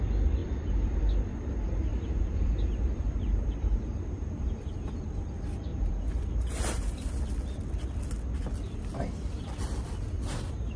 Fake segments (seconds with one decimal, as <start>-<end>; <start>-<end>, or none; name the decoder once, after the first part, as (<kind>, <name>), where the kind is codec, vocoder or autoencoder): 0.4-1.0 (vocoder, BigVGAN v2); 1.9-5.0; 5.7-7.2